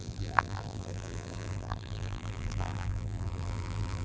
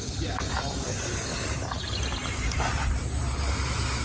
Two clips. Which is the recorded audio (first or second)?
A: second